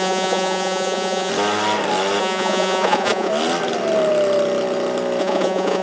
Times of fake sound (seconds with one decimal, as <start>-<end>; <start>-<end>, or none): 0.0-1.3; 2.2-3.3; 5.2-5.8